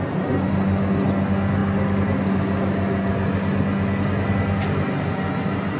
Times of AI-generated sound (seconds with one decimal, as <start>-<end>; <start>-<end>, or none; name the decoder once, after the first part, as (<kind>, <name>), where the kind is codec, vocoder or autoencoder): none